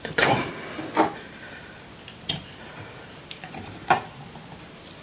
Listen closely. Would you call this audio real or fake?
fake